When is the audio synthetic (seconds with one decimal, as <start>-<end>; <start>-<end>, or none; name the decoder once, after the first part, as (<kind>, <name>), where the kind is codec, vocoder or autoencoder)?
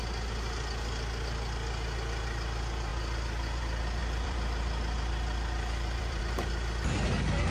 4.0-6.2 (vocoder, BigVGAN v2)